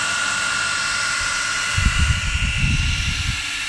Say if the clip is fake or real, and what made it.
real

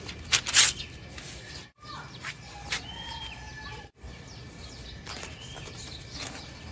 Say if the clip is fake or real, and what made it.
real